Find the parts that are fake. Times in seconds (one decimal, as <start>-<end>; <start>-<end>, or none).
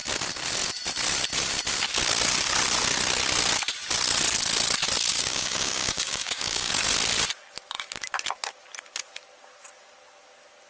5.1-6.7